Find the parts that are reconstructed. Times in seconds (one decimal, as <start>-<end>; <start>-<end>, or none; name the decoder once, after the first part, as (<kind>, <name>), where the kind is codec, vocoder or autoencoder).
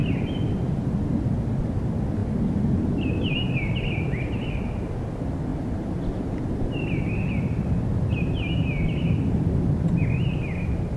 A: 0.0-1.1 (vocoder, BigVGAN v2); 2.2-4.9